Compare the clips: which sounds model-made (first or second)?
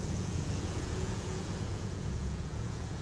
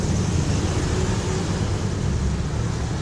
first